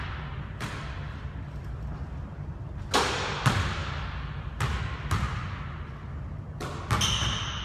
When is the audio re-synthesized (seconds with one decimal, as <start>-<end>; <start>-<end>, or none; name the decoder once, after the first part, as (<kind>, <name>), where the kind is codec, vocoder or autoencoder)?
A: none